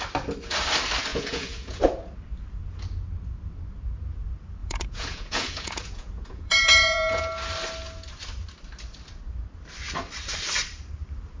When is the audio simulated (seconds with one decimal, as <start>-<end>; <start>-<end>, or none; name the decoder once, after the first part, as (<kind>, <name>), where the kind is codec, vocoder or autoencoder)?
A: 1.1-1.8 (vocoder, Vocos); 4.6-7.2